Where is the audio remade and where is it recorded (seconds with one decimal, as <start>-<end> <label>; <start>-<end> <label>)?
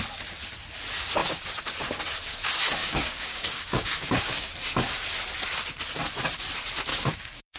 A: 0.0-2.8 recorded; 2.8-4.5 remade; 4.5-6.9 recorded; 6.9-7.6 remade